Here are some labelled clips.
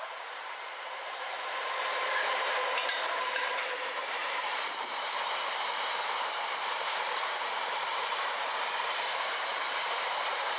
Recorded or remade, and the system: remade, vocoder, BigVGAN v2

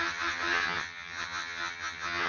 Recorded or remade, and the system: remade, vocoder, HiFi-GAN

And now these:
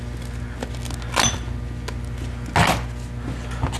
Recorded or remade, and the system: recorded